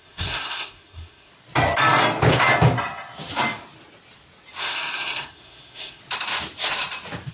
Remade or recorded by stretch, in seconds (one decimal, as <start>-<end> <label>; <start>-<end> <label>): 0.0-1.3 remade; 1.3-4.6 recorded; 4.6-6.0 remade; 6.0-7.3 recorded